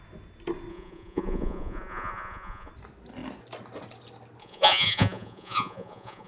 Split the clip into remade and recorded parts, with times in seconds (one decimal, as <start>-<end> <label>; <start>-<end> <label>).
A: 0.0-0.7 recorded; 0.7-2.7 remade; 2.7-4.4 recorded; 4.4-6.3 remade